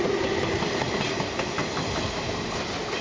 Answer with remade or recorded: recorded